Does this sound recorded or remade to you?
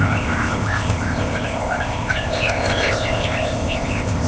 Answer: remade